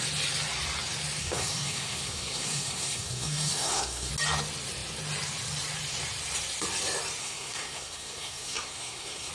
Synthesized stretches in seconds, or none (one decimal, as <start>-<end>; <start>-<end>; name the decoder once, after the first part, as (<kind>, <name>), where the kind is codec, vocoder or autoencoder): 1.2-4.1 (codec, SNAC); 7.2-9.3